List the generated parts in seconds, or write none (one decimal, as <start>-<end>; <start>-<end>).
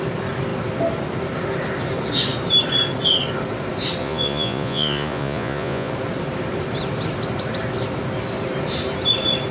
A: 4.0-5.9